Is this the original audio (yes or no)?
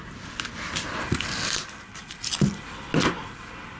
yes